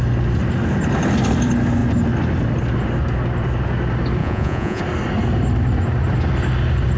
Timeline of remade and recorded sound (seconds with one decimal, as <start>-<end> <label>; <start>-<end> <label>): 0.0-4.2 recorded; 4.2-4.8 remade; 4.8-7.0 recorded